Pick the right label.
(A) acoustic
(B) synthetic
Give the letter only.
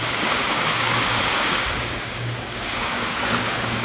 B